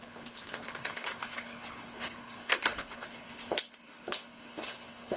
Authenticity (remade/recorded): remade